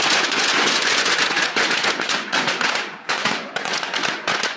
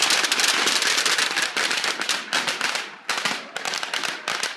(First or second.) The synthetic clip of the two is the first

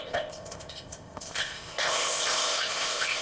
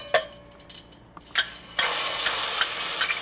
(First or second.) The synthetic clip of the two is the first